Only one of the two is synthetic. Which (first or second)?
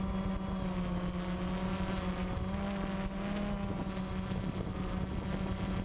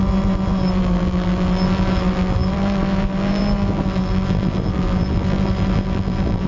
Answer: second